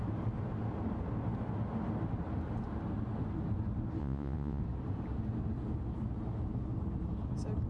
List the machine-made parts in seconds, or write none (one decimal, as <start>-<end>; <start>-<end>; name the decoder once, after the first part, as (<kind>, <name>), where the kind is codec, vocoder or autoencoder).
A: 4.0-4.6 (vocoder, Vocos)